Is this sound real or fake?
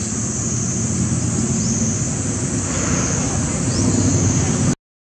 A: real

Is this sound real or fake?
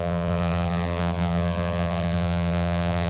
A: fake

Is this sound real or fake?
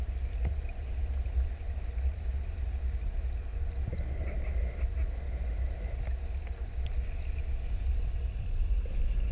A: real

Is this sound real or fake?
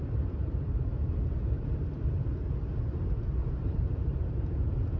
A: fake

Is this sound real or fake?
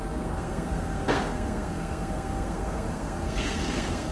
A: fake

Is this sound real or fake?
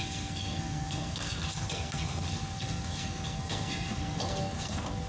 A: fake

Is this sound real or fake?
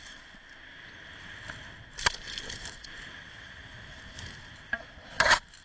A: real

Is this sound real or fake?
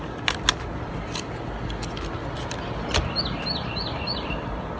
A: real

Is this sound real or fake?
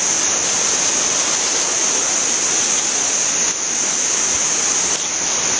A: real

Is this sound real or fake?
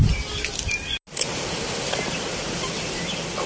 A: real